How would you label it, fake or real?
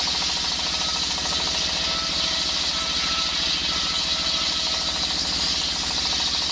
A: real